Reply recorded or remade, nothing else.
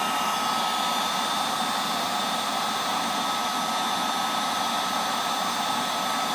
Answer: recorded